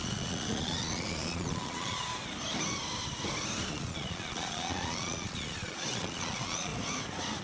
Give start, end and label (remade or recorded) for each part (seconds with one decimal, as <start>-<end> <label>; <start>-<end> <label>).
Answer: 0.0-2.1 remade; 2.1-3.7 recorded; 3.7-6.7 remade; 6.7-7.4 recorded